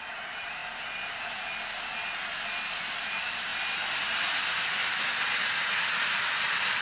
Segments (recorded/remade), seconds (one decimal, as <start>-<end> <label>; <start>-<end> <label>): 0.0-0.6 remade; 0.6-3.0 recorded; 3.0-3.5 remade; 3.5-4.3 recorded; 4.3-4.8 remade; 4.8-6.1 recorded; 6.1-6.8 remade